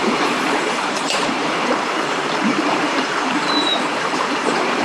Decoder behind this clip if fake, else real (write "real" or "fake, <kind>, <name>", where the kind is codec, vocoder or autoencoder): fake, vocoder, BigVGAN v2